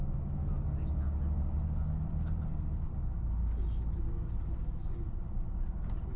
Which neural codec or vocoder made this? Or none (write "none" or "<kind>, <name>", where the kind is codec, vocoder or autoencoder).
none